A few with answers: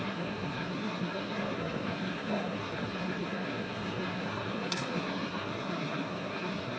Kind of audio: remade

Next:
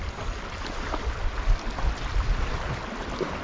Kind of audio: recorded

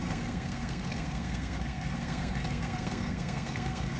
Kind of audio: remade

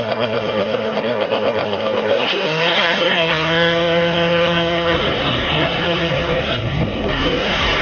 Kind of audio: remade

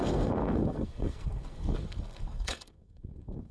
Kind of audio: remade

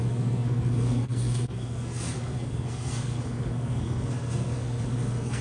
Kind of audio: remade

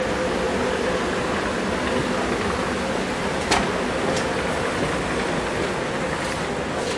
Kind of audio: recorded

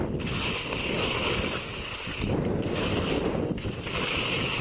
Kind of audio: recorded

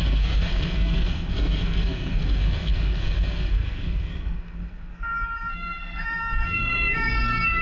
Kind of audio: remade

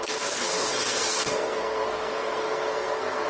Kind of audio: remade